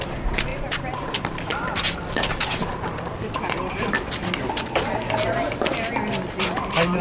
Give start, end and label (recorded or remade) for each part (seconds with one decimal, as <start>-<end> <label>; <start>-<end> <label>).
0.0-7.0 recorded